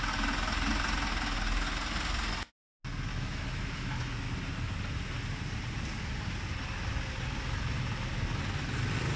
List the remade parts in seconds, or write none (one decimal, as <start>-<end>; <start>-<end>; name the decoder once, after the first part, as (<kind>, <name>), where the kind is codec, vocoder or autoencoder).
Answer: 3.1-4.3 (autoencoder, DAC-VAE)

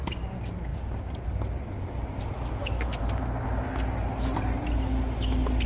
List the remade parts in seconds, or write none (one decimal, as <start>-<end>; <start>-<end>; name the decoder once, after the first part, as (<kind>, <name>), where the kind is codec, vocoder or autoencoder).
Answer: none

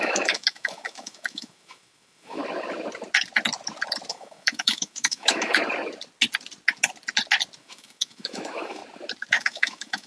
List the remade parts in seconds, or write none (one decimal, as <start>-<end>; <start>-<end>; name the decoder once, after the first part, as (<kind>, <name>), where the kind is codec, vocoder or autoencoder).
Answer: 0.0-2.4 (autoencoder, DAC-VAE); 4.1-5.6; 7.6-8.8; 9.3-10.1